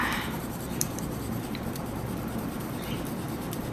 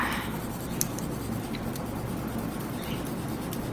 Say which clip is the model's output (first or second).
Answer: first